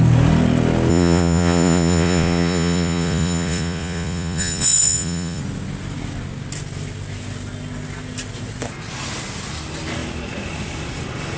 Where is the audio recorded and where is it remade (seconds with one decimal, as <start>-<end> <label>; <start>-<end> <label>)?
0.0-0.9 recorded; 0.9-5.4 remade; 5.4-11.4 recorded